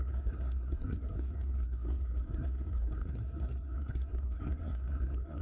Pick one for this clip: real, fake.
fake